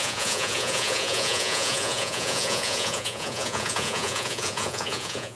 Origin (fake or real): fake